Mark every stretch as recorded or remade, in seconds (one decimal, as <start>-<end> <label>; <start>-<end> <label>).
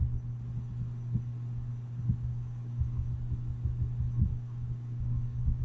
0.0-2.3 recorded; 2.3-3.1 remade; 3.1-4.3 recorded; 4.3-5.6 remade